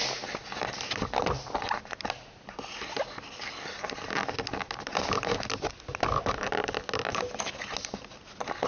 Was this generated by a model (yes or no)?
no